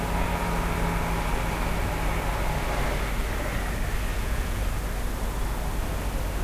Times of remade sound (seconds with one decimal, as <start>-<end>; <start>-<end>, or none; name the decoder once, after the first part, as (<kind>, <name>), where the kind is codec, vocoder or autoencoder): 4.1-4.6 (vocoder, Vocos)